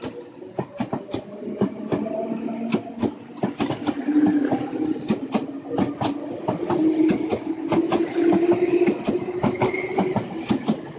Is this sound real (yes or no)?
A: yes